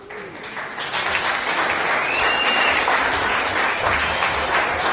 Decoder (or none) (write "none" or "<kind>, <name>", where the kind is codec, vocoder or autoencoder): none